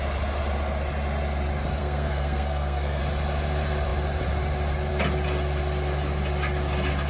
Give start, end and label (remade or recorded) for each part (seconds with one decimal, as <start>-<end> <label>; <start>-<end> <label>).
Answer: 0.0-1.8 recorded; 1.8-3.0 remade; 3.0-7.1 recorded